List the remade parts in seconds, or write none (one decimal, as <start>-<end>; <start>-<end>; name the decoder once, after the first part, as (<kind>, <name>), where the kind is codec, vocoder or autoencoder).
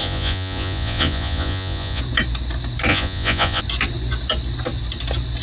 0.0-2.0 (vocoder, Vocos); 2.9-3.6